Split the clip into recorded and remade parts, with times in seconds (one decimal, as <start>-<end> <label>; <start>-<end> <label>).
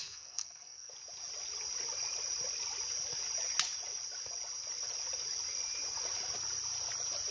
0.0-0.9 remade; 0.9-7.3 recorded